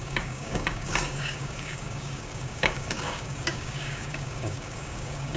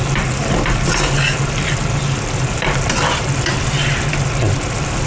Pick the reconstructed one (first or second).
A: first